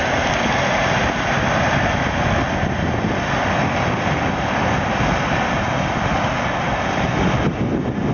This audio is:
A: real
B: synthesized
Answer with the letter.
A